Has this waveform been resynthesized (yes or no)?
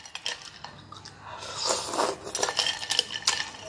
no